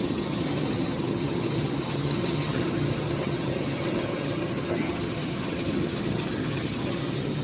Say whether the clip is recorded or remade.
remade